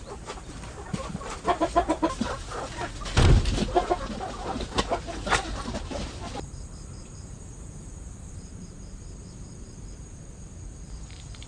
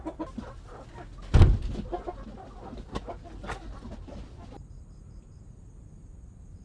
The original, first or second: second